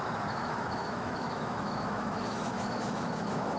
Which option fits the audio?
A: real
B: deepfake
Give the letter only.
B